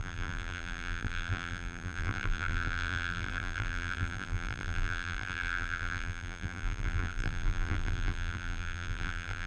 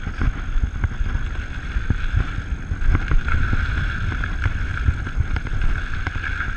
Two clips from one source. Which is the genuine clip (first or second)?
second